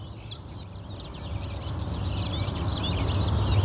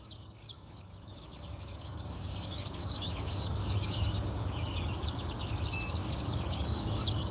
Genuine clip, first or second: first